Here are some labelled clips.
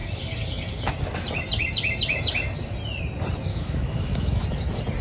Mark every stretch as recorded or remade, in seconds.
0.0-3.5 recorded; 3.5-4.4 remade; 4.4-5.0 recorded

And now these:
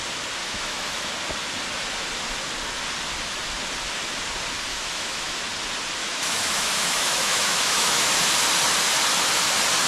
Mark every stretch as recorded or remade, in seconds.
0.0-0.4 recorded; 0.4-1.1 remade; 1.1-4.7 recorded; 4.7-5.4 remade; 5.4-6.0 recorded; 6.0-8.1 remade; 8.1-9.9 recorded

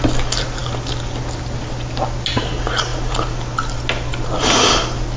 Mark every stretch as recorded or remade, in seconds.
0.0-5.2 recorded

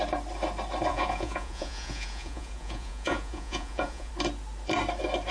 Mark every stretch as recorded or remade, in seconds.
0.0-0.9 recorded; 0.9-4.1 remade; 4.1-5.3 recorded

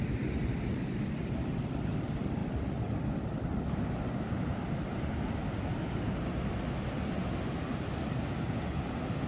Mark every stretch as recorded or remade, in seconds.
0.0-9.3 recorded

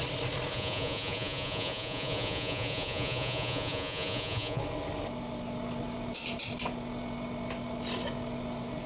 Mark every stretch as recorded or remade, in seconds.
0.0-0.5 recorded; 0.5-4.6 remade; 4.6-8.9 recorded